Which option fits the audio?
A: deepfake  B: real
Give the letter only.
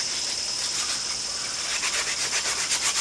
B